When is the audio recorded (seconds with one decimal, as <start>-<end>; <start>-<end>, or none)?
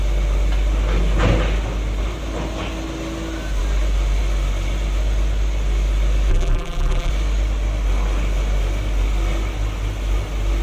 0.0-6.3; 7.1-10.6